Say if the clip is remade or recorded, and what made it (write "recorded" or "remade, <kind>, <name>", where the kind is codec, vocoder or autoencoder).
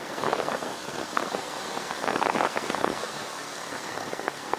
remade, codec, SNAC